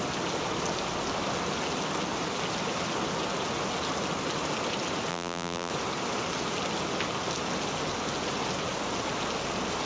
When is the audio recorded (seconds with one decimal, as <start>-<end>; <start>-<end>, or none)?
0.0-5.1; 5.7-9.8